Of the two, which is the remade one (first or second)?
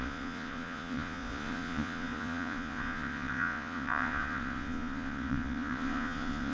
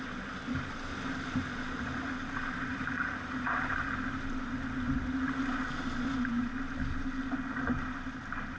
first